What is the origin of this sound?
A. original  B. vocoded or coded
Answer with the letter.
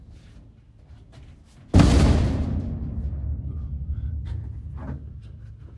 A